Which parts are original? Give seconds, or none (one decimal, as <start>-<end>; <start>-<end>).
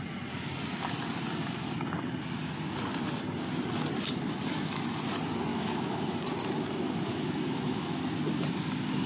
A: 0.0-5.5; 6.3-7.1; 8.0-9.1